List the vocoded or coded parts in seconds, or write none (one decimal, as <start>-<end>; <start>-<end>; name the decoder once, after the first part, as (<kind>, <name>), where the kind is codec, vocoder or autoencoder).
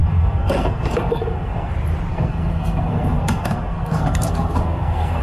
0.0-1.7 (codec, SNAC); 2.1-5.2